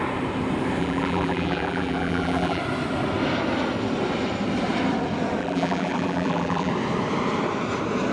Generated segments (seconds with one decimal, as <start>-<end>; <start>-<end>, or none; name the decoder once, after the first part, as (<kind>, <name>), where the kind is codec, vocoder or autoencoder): 0.8-2.6 (vocoder, BigVGAN v2); 5.4-6.7